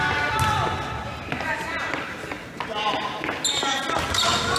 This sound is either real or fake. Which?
real